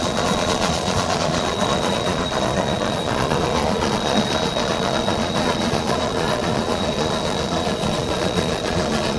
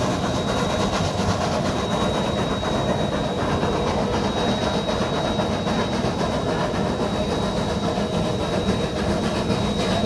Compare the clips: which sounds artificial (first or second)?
first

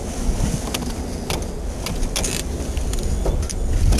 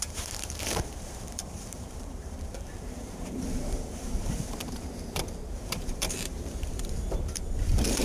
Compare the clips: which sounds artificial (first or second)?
second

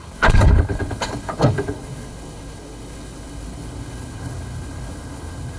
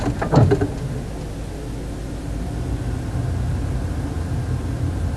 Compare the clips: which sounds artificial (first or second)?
first